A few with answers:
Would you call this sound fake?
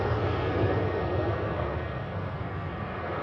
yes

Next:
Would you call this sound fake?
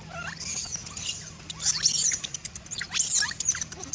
no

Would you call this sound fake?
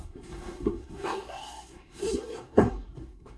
yes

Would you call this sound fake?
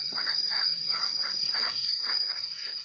yes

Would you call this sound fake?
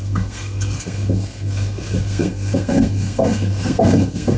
yes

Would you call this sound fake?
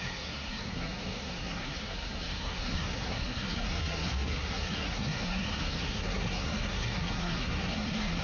yes